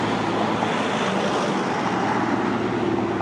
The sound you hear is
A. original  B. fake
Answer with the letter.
A